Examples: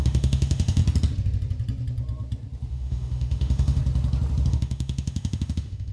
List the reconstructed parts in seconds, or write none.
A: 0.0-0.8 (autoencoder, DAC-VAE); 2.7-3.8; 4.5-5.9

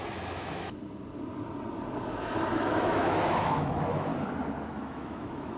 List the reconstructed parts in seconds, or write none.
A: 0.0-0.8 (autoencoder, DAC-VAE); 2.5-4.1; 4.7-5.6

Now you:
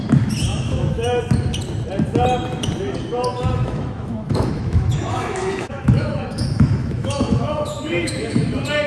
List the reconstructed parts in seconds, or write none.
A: 0.5-1.2 (autoencoder, DAC-VAE); 3.3-8.4